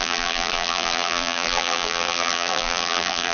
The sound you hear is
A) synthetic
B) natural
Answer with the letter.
A